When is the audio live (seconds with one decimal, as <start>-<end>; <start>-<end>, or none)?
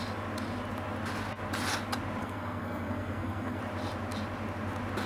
0.0-2.2; 3.6-5.1